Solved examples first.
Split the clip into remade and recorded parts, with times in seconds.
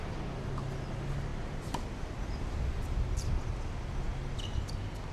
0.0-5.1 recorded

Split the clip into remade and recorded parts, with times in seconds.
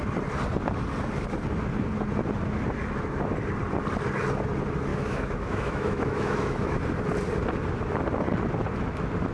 0.0-4.9 recorded; 4.9-6.8 remade; 6.8-9.3 recorded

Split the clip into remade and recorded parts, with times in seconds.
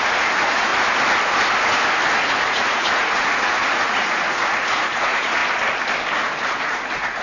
0.0-0.7 remade; 0.7-2.3 recorded; 2.3-5.4 remade; 5.4-6.6 recorded; 6.6-7.2 remade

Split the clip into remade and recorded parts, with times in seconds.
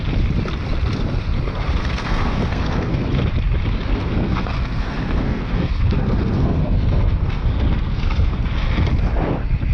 0.0-1.8 recorded; 1.8-3.0 remade; 3.0-3.9 recorded; 3.9-8.5 remade; 8.5-9.7 recorded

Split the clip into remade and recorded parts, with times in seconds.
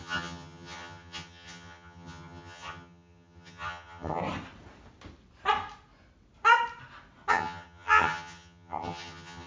0.0-4.2 remade; 4.2-7.3 recorded; 7.3-9.5 remade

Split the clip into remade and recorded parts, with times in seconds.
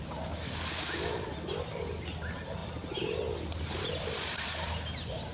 0.0-5.3 recorded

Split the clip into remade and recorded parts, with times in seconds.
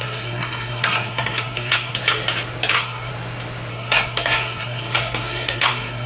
0.0-2.0 remade; 2.0-2.7 recorded; 2.7-3.1 remade; 3.1-3.7 recorded; 3.7-6.1 remade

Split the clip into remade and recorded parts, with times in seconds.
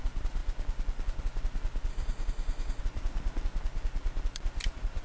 0.0-1.9 recorded; 1.9-2.8 remade; 2.8-5.0 recorded